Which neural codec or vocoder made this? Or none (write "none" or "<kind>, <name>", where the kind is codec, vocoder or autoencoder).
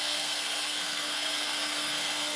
codec, SNAC